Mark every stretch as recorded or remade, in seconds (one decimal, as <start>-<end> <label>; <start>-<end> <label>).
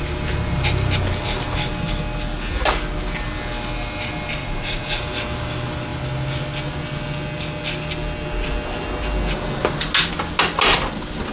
0.0-4.4 recorded; 4.4-5.0 remade; 5.0-11.3 recorded